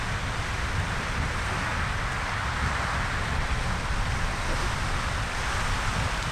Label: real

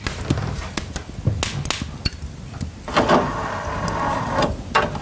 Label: real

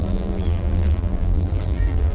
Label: fake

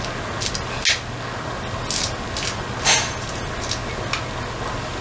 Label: real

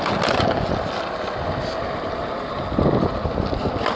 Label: real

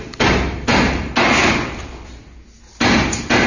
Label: real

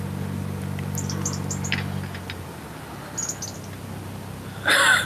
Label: real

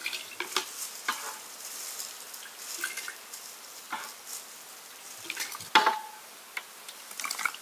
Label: real